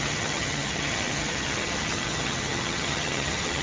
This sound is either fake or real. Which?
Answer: fake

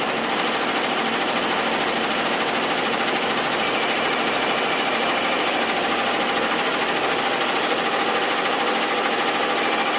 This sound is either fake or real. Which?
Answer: real